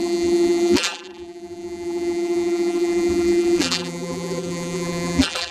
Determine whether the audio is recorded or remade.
remade